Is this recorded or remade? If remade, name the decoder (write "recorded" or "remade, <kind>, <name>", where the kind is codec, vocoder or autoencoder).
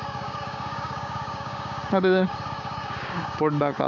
remade, codec, DAC